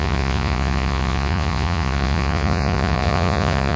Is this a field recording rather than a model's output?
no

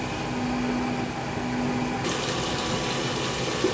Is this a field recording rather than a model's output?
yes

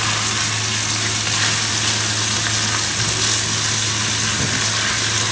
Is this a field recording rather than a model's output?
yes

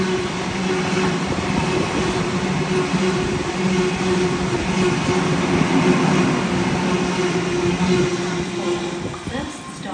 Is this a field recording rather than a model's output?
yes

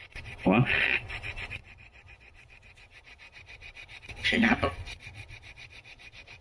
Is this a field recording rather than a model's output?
no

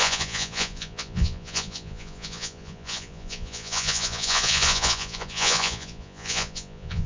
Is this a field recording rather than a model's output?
no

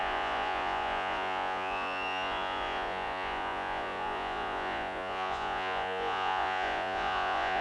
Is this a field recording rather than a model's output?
no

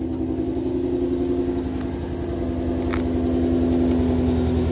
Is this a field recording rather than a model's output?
yes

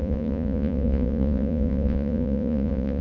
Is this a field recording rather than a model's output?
no